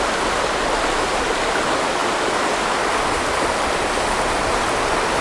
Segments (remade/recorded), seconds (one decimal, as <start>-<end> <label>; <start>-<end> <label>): 0.0-5.2 recorded